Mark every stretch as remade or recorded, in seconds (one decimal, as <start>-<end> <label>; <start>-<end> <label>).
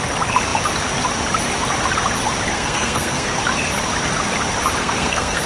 0.0-2.5 recorded; 2.5-3.4 remade; 3.4-4.8 recorded; 4.8-5.5 remade